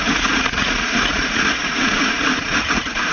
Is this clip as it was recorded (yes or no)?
no